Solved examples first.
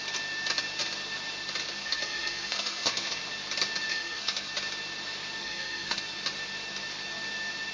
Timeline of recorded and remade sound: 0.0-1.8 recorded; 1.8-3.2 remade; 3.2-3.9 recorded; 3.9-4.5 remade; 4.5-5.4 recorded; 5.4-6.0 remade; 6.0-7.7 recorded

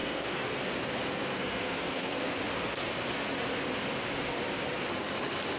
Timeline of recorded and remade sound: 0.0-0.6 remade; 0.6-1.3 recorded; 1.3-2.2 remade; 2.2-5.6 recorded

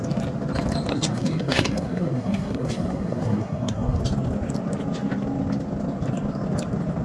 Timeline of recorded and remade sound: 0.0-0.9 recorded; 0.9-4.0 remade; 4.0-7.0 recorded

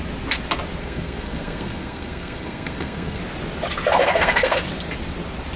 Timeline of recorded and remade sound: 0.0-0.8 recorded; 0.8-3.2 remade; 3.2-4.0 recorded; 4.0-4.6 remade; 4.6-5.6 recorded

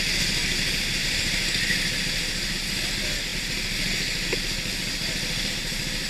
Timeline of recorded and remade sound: 0.0-6.1 recorded

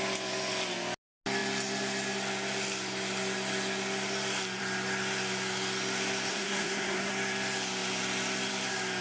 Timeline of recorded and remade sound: 0.0-6.3 recorded; 6.3-7.1 remade; 7.1-9.0 recorded

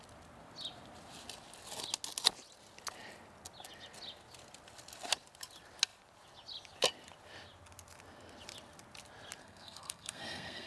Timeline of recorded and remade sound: 0.0-9.4 recorded; 9.4-10.7 remade

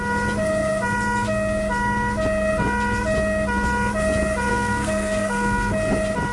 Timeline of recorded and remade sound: 0.0-4.5 recorded; 4.5-5.7 remade; 5.7-6.3 recorded